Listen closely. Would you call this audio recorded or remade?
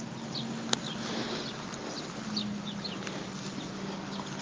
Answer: recorded